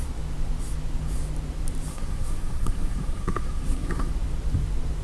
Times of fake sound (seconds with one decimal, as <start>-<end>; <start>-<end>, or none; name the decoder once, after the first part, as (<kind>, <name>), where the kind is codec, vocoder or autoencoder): 1.9-4.1 (codec, SNAC)